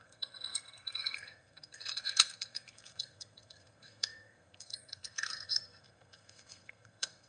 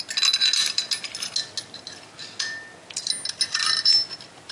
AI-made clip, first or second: first